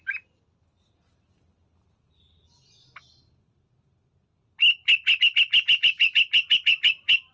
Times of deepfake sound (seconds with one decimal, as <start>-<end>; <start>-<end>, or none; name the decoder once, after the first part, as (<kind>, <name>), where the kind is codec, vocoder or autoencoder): none